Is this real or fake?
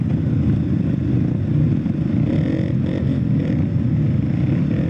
real